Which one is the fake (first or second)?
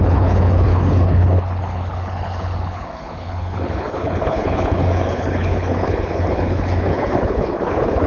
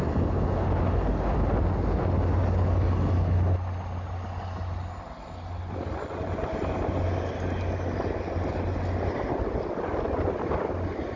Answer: first